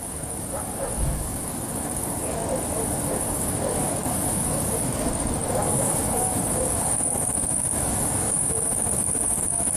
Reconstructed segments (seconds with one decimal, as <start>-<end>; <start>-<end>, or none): 0.0-2.4; 3.1-9.8